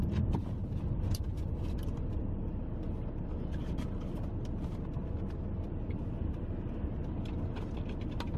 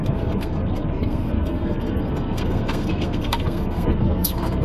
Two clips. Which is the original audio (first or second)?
first